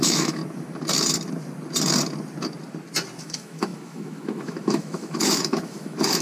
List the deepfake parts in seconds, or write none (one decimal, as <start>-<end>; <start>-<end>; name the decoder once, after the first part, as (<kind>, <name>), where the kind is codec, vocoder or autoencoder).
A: 0.0-0.4 (autoencoder, DAC-VAE); 3.2-6.2